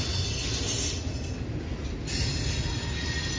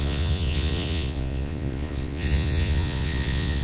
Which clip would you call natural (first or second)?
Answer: first